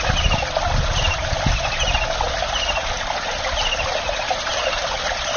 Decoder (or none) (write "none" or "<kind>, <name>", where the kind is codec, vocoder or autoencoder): none